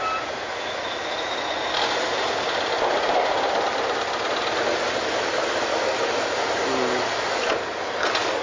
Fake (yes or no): no